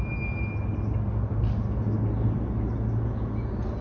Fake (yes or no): no